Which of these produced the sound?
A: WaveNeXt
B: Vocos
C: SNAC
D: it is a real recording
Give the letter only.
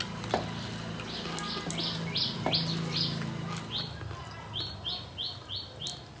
D